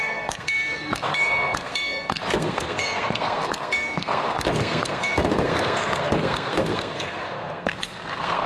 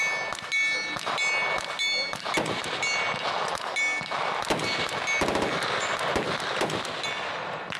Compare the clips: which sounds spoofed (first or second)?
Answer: first